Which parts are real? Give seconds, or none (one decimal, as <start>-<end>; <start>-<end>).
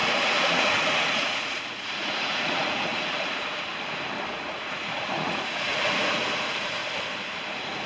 3.7-4.3; 6.8-7.5